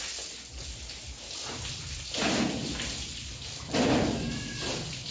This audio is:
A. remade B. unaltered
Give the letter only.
B